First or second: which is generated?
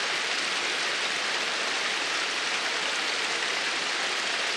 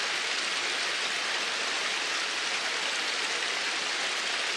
first